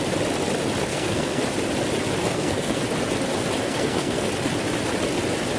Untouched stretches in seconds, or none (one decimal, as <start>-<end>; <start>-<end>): 0.0-0.9; 1.4-2.2; 2.8-3.6; 4.3-5.6

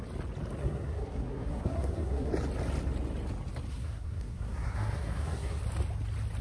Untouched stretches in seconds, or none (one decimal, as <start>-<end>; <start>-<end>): 0.0-0.6; 2.3-3.7; 5.6-6.4

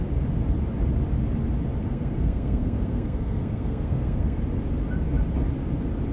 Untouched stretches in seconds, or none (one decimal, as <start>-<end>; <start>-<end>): 0.0-1.8; 4.4-6.1

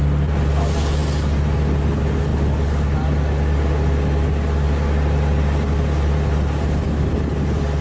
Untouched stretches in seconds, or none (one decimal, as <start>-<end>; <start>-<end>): 0.0-7.8

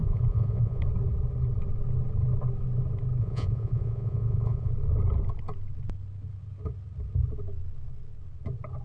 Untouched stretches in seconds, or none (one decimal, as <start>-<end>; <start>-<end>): 0.8-3.2; 4.7-8.8

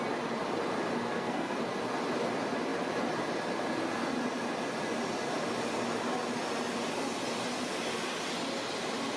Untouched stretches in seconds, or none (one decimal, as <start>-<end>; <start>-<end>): 0.0-1.0; 1.6-9.2

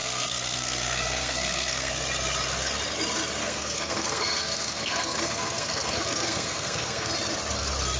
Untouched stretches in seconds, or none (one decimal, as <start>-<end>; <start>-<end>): 1.9-3.4; 7.1-8.0